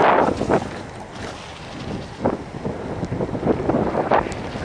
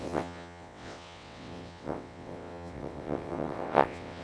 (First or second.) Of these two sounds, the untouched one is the first